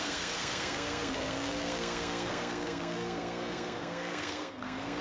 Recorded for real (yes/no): no